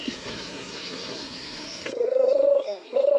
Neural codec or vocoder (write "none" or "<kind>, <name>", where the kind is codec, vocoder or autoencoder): codec, SNAC